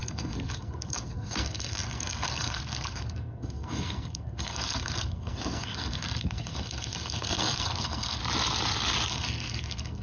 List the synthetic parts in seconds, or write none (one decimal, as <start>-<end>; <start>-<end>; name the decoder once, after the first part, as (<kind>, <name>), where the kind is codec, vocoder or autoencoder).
0.0-8.2 (codec, SNAC); 9.1-10.0